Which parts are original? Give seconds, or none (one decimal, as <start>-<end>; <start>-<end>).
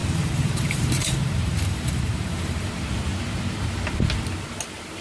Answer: 2.7-5.0